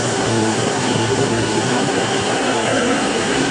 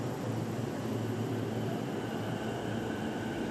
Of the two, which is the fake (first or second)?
first